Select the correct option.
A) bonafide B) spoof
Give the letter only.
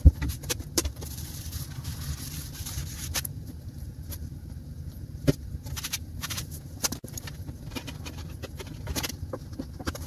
B